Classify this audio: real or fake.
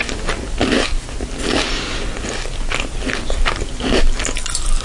real